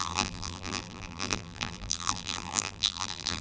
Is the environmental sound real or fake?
fake